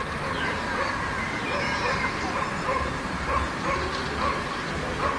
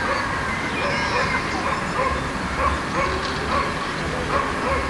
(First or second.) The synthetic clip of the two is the first